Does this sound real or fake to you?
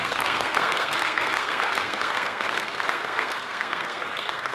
fake